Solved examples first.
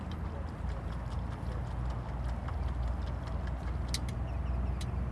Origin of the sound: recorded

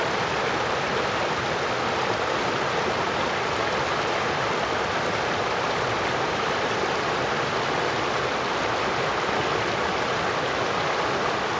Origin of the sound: recorded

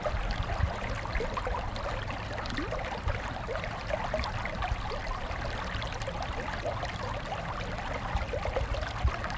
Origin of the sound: recorded